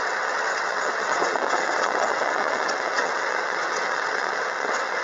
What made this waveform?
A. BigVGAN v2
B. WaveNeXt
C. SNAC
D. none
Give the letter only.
B